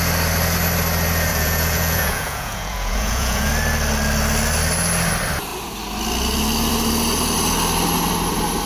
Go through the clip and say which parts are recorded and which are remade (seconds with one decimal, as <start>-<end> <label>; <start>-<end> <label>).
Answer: 0.0-1.3 recorded; 1.3-3.5 remade; 3.5-8.7 recorded